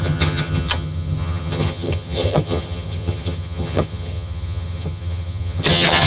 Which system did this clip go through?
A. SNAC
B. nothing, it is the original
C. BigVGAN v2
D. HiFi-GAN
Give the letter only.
D